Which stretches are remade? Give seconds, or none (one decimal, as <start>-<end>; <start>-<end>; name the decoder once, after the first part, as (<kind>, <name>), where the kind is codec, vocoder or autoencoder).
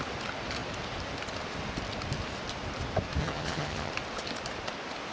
3.2-3.9 (vocoder, HiFi-GAN)